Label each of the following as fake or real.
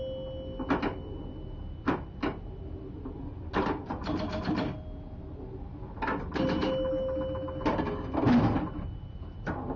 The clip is real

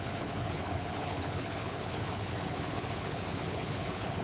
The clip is fake